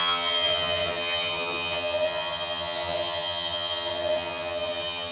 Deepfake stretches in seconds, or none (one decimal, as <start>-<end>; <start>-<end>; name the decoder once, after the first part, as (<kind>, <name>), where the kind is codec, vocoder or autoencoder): 0.0-5.1 (vocoder, HiFi-GAN)